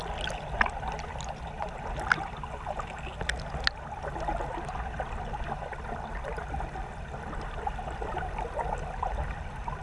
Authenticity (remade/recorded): recorded